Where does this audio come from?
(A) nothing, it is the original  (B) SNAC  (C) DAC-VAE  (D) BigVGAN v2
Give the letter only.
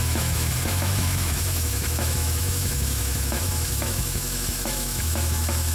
C